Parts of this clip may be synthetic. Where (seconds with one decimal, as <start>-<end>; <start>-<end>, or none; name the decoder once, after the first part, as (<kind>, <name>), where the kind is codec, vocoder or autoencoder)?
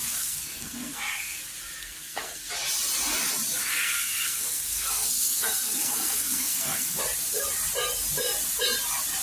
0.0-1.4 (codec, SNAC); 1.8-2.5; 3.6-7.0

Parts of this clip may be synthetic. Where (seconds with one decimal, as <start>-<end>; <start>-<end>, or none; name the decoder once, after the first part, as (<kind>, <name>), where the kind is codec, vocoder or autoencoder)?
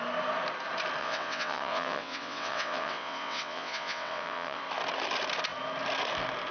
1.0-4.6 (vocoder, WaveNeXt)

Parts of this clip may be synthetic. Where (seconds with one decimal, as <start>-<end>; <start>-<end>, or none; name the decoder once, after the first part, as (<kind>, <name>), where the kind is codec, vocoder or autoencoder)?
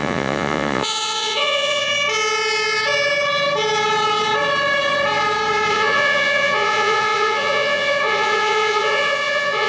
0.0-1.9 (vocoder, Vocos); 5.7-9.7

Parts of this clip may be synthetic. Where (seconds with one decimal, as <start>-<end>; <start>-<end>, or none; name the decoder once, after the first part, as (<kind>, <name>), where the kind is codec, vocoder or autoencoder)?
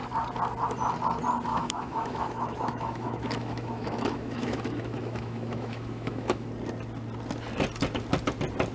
1.5-6.5 (autoencoder, DAC-VAE)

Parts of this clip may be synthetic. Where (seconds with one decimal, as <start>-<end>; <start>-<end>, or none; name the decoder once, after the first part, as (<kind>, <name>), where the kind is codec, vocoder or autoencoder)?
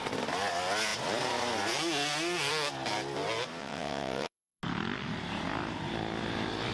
3.6-4.6 (vocoder, WaveNeXt)